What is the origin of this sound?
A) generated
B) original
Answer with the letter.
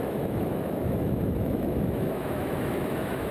A